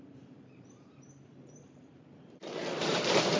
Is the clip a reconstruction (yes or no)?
yes